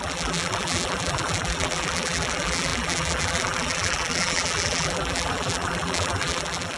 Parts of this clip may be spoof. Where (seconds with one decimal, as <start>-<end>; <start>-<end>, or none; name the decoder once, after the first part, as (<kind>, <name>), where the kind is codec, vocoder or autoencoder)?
0.0-6.8 (vocoder, BigVGAN v2)